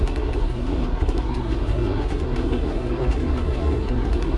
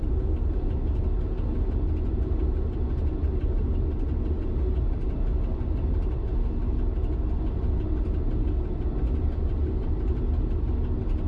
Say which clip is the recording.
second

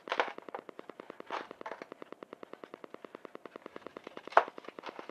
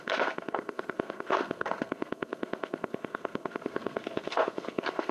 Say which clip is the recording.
first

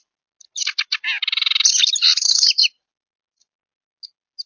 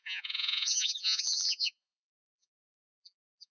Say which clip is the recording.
first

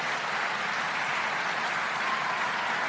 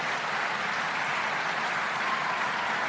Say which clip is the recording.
first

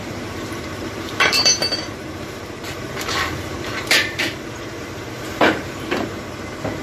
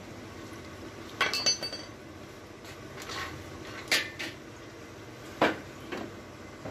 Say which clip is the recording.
second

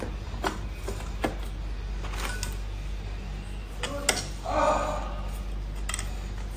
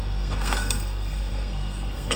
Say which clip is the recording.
first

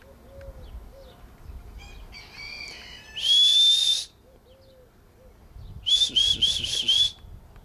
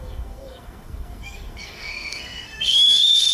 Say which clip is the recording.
first